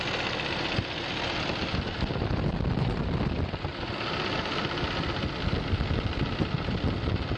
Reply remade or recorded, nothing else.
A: recorded